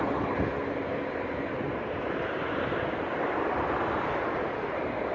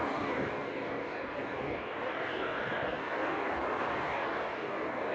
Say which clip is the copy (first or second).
second